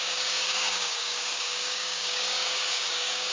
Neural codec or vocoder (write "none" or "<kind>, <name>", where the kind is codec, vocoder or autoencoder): codec, DAC